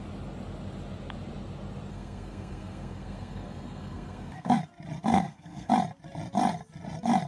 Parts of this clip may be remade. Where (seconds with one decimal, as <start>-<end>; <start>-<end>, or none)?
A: 1.9-4.6; 5.1-5.7